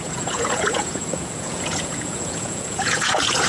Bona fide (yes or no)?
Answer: no